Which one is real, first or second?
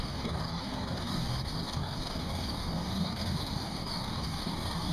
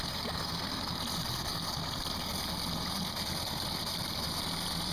second